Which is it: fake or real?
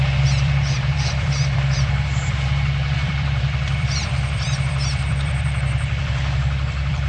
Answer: fake